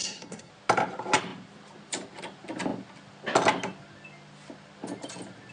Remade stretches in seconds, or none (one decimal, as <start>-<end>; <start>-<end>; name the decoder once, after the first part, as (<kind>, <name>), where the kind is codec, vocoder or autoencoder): 0.0-0.5 (codec, SNAC)